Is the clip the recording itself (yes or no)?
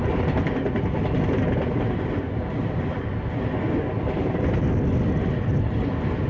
yes